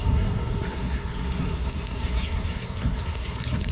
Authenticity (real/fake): fake